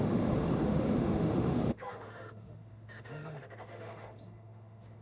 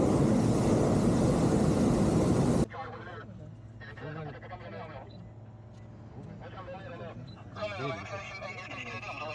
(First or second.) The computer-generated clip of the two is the first